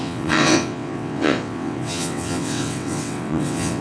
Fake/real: fake